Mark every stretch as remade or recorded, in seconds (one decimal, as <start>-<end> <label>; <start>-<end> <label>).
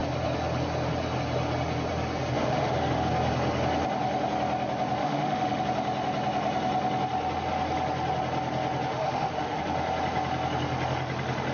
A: 0.0-2.4 recorded; 2.4-3.1 remade; 3.1-5.0 recorded; 5.0-5.6 remade; 5.6-8.9 recorded; 8.9-9.6 remade; 9.6-11.5 recorded